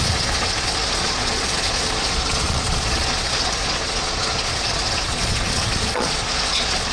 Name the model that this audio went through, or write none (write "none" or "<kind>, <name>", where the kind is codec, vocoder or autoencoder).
vocoder, Vocos